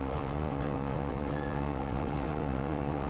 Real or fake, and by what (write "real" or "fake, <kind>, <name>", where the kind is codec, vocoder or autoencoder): fake, vocoder, WaveNeXt